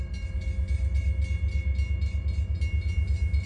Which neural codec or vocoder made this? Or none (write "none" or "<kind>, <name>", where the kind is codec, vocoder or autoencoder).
none